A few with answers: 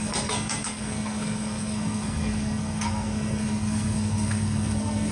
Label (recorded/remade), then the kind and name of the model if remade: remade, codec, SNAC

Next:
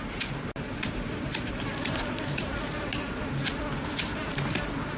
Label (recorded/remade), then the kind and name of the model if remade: remade, vocoder, BigVGAN v2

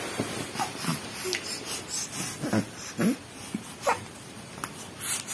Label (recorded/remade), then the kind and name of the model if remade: recorded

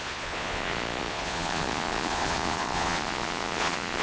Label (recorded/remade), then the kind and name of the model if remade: remade, vocoder, Vocos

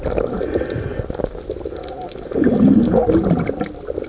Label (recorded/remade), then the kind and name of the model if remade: recorded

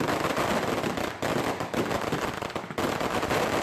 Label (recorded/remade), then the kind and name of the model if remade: remade, vocoder, BigVGAN v2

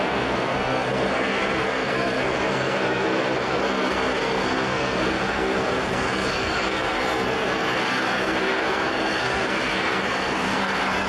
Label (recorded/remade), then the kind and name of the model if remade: remade, codec, SNAC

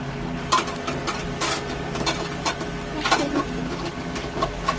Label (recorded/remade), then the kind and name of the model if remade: recorded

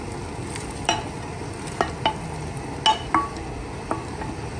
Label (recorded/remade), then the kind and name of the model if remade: recorded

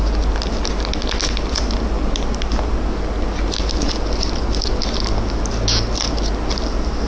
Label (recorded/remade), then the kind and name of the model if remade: recorded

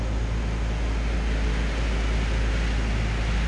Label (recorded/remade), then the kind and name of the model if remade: recorded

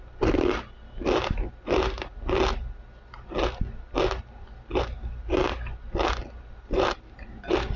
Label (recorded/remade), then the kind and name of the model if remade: recorded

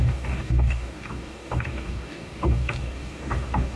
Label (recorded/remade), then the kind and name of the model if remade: remade, codec, DAC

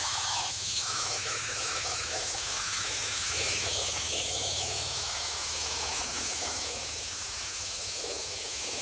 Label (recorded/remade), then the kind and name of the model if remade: remade, autoencoder, DAC-VAE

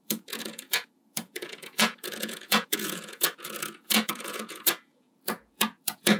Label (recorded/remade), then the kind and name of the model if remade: remade, vocoder, Vocos